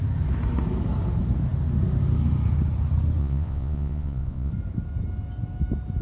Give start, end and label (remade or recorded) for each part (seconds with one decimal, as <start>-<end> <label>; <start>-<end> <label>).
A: 0.0-3.2 recorded; 3.2-4.5 remade; 4.5-6.0 recorded